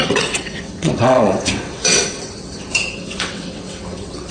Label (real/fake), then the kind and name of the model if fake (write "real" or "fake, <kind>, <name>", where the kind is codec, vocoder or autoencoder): fake, vocoder, WaveNeXt